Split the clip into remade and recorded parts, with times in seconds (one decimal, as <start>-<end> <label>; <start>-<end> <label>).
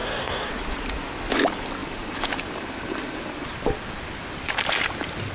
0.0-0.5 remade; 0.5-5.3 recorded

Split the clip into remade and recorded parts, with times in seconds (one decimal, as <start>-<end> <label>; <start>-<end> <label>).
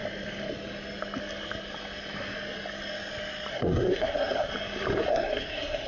0.0-3.5 recorded; 3.5-4.5 remade; 4.5-5.1 recorded; 5.1-5.9 remade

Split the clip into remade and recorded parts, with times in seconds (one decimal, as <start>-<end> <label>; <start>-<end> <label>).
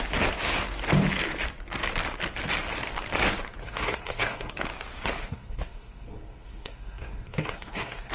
0.0-3.6 recorded; 3.6-4.5 remade; 4.5-5.2 recorded; 5.2-8.1 remade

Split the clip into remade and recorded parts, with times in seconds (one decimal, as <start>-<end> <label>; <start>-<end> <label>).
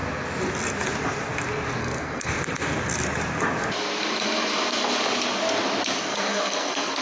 0.0-1.8 recorded; 1.8-2.3 remade; 2.3-6.0 recorded; 6.0-7.0 remade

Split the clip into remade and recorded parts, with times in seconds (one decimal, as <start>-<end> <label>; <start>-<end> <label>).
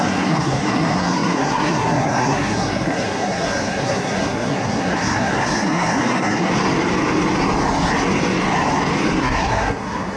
0.0-6.5 remade; 6.5-9.2 recorded; 9.2-10.2 remade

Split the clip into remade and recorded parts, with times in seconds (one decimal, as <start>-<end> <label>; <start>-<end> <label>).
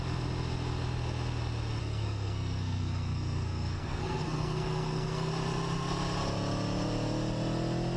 0.0-1.8 recorded; 1.8-5.3 remade; 5.3-8.0 recorded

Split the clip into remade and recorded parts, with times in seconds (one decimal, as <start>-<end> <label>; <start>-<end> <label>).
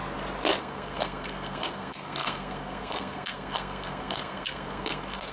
0.0-0.6 recorded; 0.6-5.3 remade